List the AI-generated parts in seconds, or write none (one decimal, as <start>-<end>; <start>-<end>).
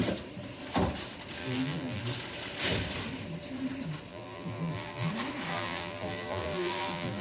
1.4-2.0; 4.1-5.1; 5.5-7.2